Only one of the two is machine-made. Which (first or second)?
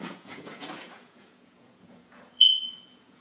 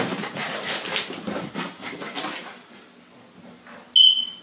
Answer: first